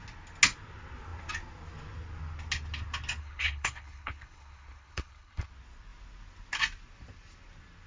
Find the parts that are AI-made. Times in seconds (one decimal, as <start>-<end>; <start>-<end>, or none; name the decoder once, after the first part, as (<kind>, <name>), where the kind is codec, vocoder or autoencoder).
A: 3.2-5.5 (codec, HILCodec)